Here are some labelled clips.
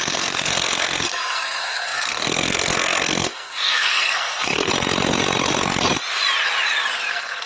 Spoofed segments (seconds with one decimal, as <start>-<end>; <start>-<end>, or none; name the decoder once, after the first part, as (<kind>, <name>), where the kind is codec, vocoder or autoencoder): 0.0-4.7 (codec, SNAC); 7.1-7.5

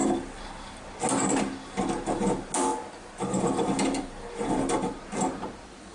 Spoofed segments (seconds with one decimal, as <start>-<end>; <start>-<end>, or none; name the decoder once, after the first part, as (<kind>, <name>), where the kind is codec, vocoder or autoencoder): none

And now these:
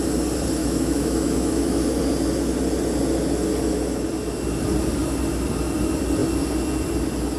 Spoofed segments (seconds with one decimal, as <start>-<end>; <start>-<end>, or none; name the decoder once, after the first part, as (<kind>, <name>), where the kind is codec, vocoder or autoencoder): 0.6-2.0 (autoencoder, DAC-VAE)